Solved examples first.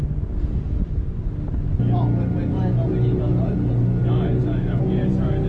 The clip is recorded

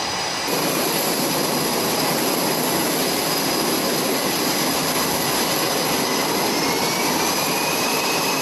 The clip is recorded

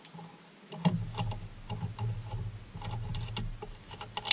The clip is recorded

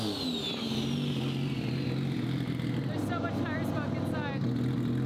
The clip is recorded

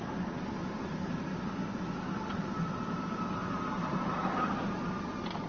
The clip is recorded